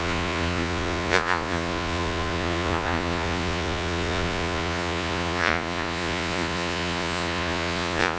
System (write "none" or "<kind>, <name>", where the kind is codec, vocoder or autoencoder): vocoder, Vocos